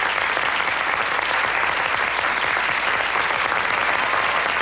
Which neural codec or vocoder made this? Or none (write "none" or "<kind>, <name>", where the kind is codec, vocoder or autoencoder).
none